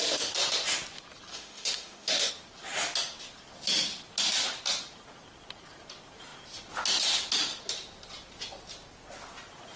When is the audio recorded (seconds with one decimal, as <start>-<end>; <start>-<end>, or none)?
0.0-1.3; 2.3-9.8